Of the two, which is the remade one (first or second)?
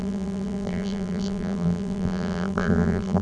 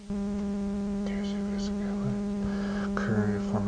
first